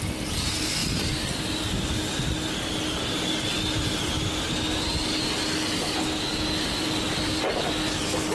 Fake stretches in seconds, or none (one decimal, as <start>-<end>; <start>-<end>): none

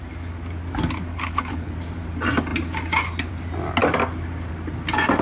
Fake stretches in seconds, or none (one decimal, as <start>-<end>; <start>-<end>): 1.1-1.7

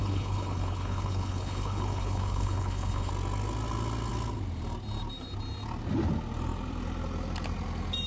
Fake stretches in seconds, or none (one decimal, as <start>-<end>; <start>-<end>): 0.0-3.1

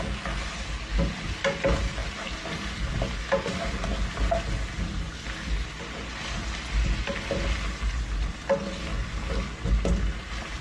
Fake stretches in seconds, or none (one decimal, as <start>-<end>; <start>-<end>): none

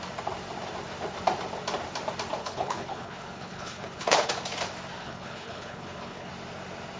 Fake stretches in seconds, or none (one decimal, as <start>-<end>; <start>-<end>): 2.4-4.3; 5.0-6.3